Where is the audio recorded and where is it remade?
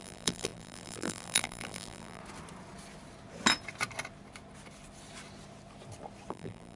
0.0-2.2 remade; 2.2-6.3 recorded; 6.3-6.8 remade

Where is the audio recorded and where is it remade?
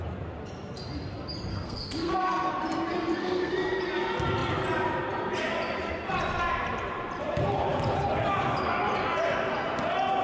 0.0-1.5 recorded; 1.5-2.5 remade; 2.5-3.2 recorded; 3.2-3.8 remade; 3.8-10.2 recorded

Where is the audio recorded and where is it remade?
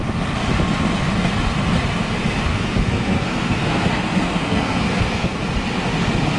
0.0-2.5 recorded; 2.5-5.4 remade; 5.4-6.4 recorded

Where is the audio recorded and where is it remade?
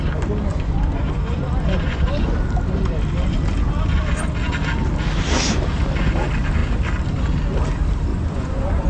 0.0-0.5 recorded; 0.5-2.2 remade; 2.2-8.1 recorded; 8.1-8.9 remade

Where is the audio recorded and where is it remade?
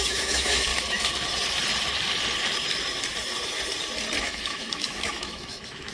0.0-0.7 remade; 0.7-4.2 recorded; 4.2-5.9 remade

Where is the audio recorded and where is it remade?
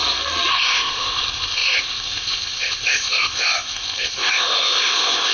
0.0-0.5 recorded; 0.5-5.3 remade